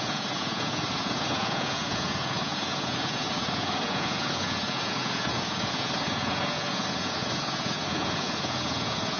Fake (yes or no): yes